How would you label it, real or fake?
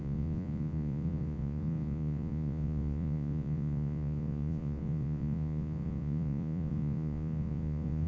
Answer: fake